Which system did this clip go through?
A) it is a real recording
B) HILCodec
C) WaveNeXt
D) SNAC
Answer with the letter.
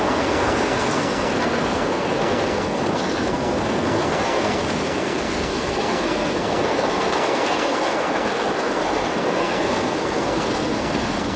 D